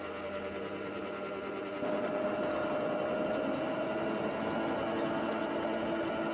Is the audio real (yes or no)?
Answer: yes